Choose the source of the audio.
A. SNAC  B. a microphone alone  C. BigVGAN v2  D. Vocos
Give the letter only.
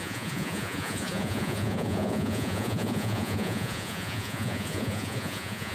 D